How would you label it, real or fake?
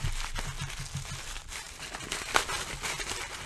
real